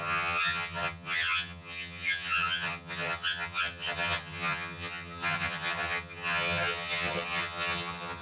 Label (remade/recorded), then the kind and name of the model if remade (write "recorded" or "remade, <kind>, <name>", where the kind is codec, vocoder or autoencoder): remade, vocoder, HiFi-GAN